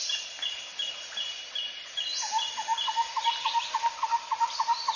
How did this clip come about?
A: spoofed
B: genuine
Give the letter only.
B